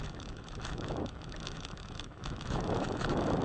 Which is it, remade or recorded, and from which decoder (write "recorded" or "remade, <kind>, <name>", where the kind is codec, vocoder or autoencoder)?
remade, autoencoder, DAC-VAE